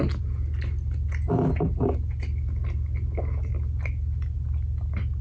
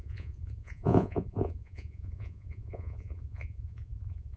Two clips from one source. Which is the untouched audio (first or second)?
first